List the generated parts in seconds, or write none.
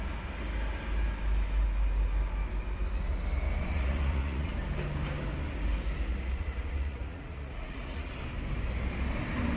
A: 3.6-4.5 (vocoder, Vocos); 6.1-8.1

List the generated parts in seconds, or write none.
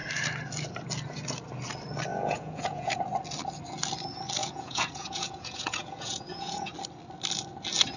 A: 2.1-3.0 (vocoder, Vocos); 4.4-6.7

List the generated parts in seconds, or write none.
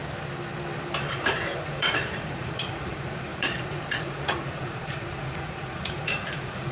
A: 1.1-6.7 (vocoder, Vocos)